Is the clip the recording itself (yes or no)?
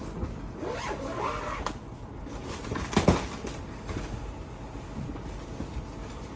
yes